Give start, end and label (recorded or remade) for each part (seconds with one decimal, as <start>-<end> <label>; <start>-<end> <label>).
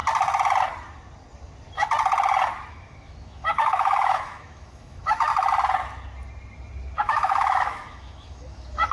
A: 0.0-2.7 recorded; 2.7-5.3 remade; 5.3-7.0 recorded; 7.0-8.9 remade